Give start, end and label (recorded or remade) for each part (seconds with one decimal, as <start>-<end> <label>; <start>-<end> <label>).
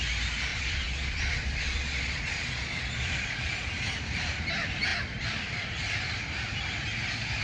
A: 0.0-0.5 recorded; 0.5-3.8 remade; 3.8-7.4 recorded